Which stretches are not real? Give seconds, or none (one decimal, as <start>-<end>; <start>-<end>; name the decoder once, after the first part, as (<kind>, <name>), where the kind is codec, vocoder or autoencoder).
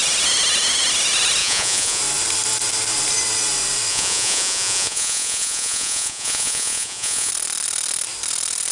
1.4-2.0 (vocoder, Vocos); 3.9-7.3